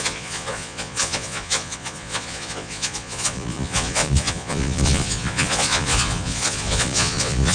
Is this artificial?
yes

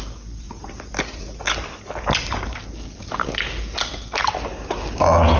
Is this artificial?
no